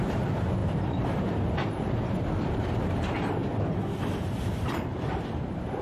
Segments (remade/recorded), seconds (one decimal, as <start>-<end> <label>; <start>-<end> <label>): 0.0-3.4 remade; 3.4-4.1 recorded; 4.1-5.8 remade